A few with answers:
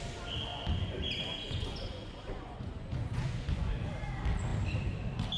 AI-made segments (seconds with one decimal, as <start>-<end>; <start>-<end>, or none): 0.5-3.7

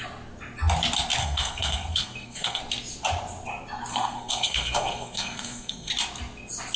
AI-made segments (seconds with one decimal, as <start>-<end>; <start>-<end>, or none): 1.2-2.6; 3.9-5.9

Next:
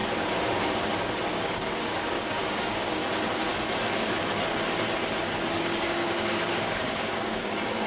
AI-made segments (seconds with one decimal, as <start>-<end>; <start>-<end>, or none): 1.3-3.0; 5.6-7.9